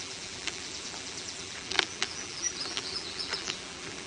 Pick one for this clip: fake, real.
fake